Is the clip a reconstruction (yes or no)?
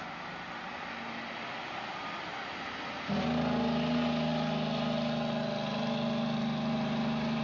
no